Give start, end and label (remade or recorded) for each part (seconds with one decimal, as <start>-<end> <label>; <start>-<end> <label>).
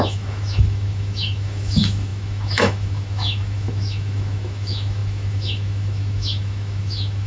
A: 0.0-7.3 remade